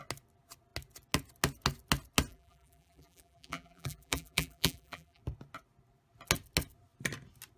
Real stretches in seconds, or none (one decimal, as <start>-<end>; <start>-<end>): 0.0-2.3; 5.2-7.6